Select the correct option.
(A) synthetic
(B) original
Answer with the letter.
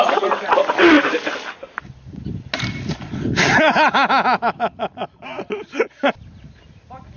B